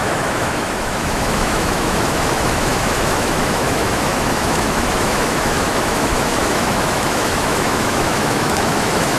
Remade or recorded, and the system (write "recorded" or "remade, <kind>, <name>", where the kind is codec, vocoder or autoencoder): remade, autoencoder, DAC-VAE